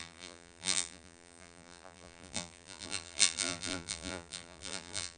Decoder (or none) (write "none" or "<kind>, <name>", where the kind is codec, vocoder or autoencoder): vocoder, BigVGAN v2